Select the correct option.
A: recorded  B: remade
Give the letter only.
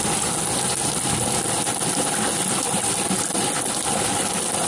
A